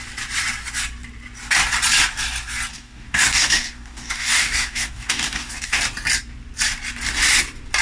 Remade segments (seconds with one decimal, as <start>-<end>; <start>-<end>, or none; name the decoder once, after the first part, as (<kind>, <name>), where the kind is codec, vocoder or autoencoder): 2.7-5.8 (codec, DAC)